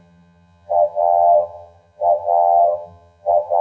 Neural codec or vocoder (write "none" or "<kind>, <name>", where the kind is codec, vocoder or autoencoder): vocoder, HiFi-GAN